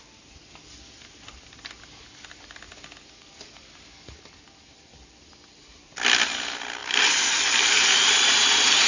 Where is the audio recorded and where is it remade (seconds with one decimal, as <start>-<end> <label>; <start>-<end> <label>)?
0.0-6.8 recorded; 6.8-8.9 remade